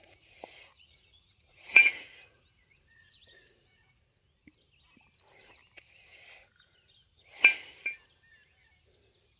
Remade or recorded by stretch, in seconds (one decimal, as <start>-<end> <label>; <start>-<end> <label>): 0.0-4.0 remade; 4.0-9.4 recorded